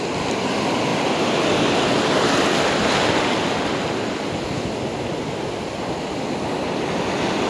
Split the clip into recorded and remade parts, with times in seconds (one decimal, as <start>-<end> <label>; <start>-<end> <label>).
0.0-0.9 recorded; 0.9-2.6 remade; 2.6-7.5 recorded